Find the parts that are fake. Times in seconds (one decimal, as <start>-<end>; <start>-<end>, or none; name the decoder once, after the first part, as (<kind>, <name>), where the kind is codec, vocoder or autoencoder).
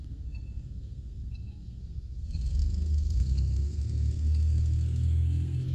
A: 0.0-5.7 (codec, SNAC)